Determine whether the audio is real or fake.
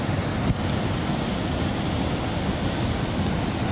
real